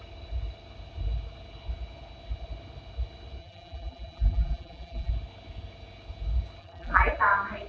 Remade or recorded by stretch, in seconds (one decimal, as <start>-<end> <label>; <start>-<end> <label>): 0.0-3.4 recorded; 3.4-5.1 remade; 5.1-6.6 recorded; 6.6-7.2 remade; 7.2-7.7 recorded